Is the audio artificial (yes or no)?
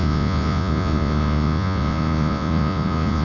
yes